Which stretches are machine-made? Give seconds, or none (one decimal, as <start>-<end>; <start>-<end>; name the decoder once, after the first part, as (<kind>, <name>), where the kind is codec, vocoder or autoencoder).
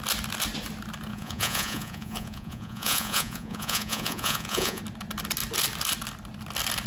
1.1-4.8 (vocoder, Vocos)